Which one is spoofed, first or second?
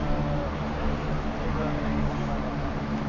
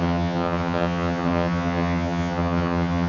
second